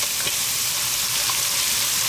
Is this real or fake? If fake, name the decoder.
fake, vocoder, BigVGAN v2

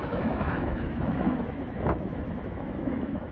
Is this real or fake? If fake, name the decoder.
fake, autoencoder, DAC-VAE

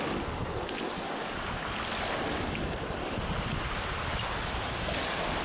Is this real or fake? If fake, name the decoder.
real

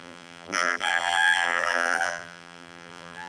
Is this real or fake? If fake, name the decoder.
fake, vocoder, BigVGAN v2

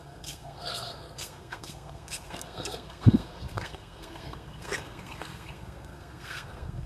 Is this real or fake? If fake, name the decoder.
fake, codec, SNAC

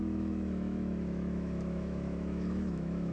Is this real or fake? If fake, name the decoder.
fake, autoencoder, DAC-VAE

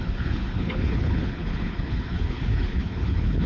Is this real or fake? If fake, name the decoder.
fake, codec, HILCodec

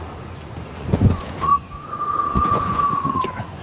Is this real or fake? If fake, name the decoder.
fake, vocoder, Vocos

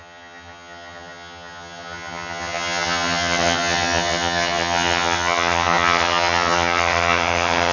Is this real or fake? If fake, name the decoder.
fake, vocoder, HiFi-GAN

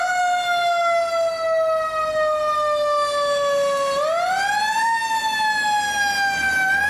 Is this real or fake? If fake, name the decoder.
real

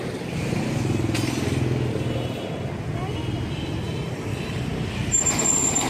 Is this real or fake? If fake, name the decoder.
real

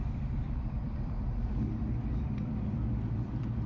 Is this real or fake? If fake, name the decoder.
fake, vocoder, BigVGAN v2